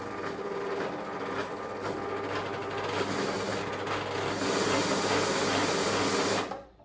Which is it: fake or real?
real